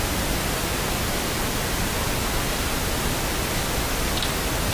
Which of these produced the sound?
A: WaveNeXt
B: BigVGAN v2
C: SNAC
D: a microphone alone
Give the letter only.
D